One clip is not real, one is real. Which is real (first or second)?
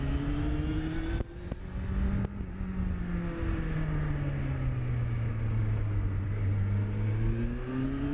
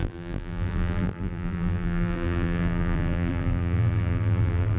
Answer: first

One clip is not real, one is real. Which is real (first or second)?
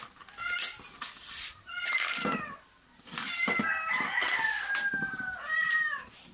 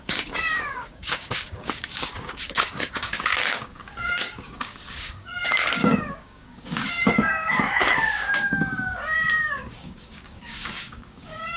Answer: first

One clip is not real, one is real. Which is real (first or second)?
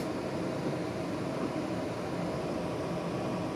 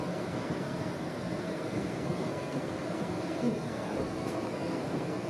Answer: first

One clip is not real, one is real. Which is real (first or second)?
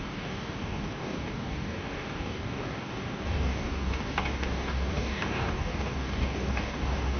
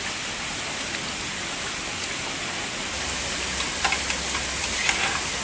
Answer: second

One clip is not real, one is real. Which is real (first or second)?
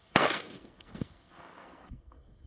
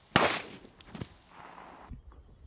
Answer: second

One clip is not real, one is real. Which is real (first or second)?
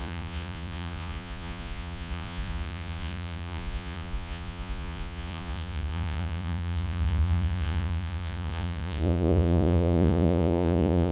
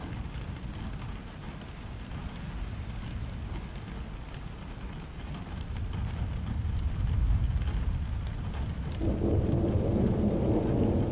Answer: second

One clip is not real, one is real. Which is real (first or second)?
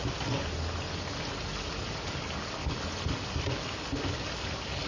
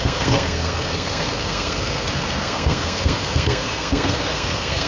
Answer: first